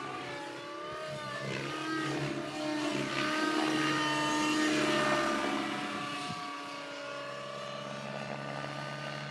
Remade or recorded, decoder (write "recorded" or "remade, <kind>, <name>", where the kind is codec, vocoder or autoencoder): recorded